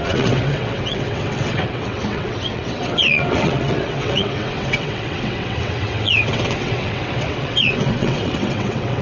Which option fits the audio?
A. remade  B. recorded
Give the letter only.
A